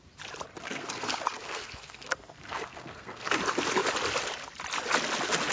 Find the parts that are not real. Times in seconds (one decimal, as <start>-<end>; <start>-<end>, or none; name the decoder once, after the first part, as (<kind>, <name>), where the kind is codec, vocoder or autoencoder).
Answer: 0.5-3.4 (codec, SNAC)